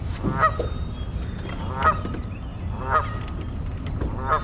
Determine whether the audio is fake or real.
real